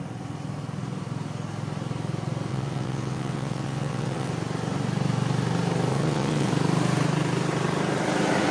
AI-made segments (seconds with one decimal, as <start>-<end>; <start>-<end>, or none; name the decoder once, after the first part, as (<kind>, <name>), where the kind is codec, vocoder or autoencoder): 2.5-4.3 (vocoder, WaveNeXt); 5.9-6.5